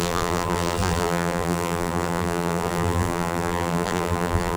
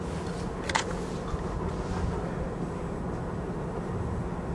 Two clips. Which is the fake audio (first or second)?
first